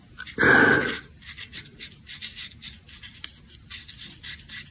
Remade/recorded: recorded